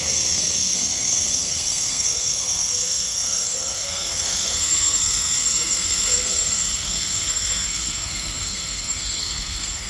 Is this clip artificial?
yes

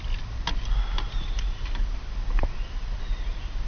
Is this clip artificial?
no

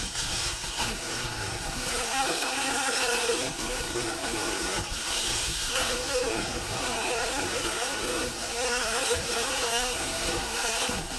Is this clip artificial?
yes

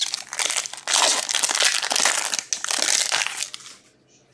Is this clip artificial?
no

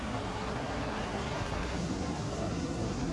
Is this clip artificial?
yes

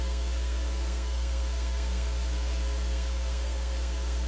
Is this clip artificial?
yes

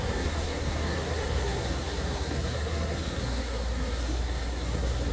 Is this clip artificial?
yes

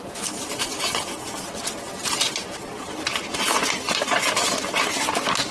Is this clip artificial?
no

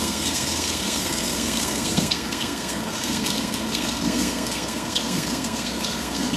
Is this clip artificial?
yes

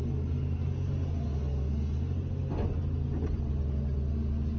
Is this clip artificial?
no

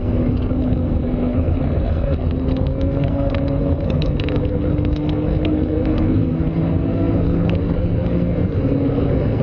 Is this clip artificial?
yes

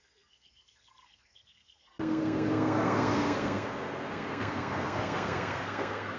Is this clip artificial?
yes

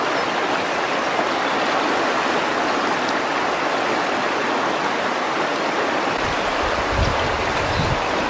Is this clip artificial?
no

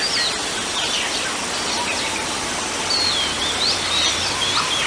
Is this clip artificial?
no